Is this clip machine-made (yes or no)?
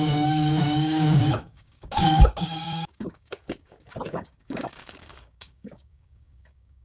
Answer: yes